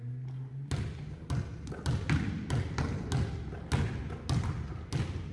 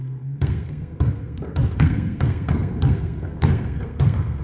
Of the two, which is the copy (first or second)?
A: second